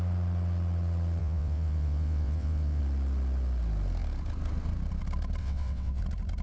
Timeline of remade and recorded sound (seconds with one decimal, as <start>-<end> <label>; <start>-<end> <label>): 0.0-1.2 recorded; 1.2-2.8 remade; 2.8-5.4 recorded; 5.4-6.0 remade; 6.0-6.4 recorded